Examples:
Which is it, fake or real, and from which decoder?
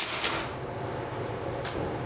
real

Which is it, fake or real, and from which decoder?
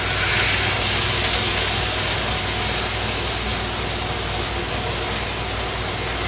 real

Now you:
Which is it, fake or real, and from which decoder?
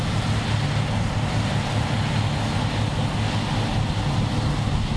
real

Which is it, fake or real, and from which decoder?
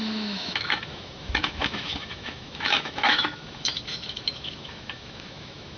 fake, autoencoder, DAC-VAE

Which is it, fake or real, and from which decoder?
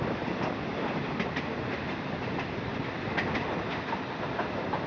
real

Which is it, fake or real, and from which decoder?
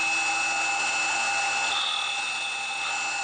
real